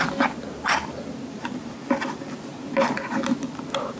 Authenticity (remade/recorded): recorded